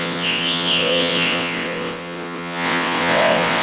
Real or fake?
fake